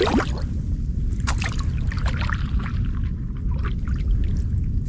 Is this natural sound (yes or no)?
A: yes